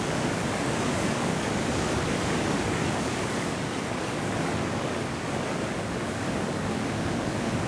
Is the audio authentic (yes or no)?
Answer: no